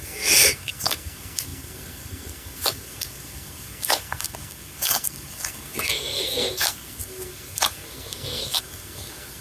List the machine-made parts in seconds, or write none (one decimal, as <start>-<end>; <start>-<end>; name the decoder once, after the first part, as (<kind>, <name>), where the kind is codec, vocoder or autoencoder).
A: 0.0-9.4 (codec, SNAC)